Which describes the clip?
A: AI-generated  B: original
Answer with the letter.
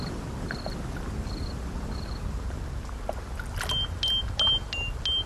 B